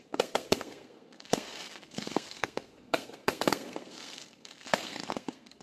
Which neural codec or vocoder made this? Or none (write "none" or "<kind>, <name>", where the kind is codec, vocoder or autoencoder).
codec, SNAC